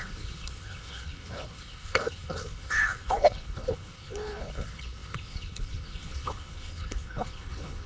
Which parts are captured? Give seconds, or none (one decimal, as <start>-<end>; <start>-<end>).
none